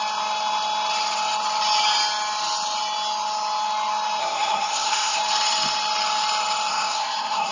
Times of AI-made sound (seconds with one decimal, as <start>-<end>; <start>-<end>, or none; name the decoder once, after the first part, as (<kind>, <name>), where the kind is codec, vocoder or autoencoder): 4.2-5.2 (codec, SNAC); 6.7-7.5